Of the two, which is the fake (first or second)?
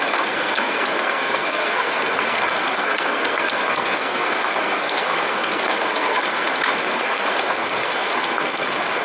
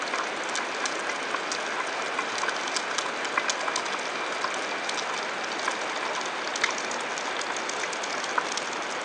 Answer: first